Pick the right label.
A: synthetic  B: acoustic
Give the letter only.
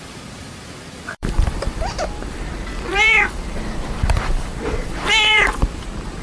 A